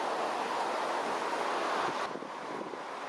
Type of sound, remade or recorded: remade